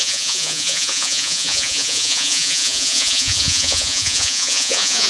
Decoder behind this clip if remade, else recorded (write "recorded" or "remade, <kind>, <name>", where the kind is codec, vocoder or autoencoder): remade, vocoder, Vocos